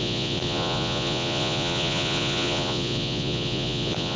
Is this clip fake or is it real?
fake